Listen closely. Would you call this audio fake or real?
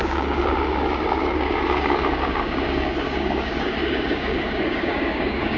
fake